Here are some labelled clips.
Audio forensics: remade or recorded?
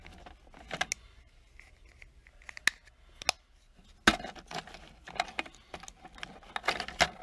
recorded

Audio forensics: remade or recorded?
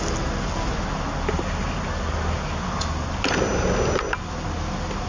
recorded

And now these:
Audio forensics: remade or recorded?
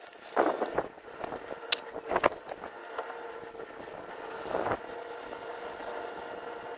recorded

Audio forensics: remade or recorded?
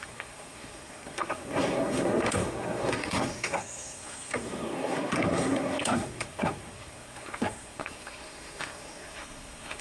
remade